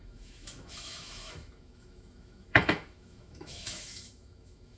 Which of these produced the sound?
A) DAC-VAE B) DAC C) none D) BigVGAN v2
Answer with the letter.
A